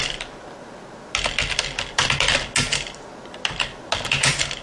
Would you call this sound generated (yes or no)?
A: no